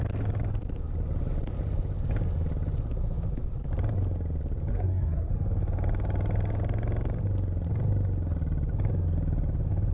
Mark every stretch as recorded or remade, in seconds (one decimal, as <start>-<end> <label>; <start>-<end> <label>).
0.0-4.7 recorded; 4.7-5.3 remade; 5.3-9.9 recorded